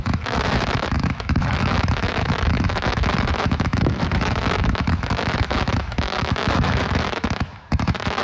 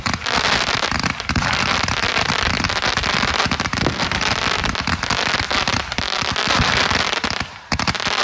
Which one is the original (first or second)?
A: second